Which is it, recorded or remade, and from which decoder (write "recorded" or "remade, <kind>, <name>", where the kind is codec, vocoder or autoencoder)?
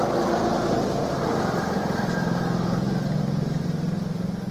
recorded